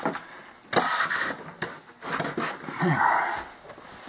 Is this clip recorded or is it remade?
recorded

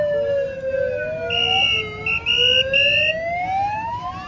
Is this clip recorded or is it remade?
recorded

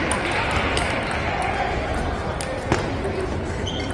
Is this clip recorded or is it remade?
recorded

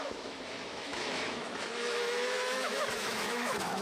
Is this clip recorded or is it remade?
remade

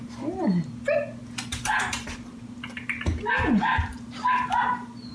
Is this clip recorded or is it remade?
remade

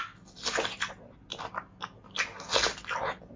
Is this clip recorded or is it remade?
recorded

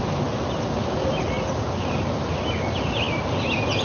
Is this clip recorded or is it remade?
recorded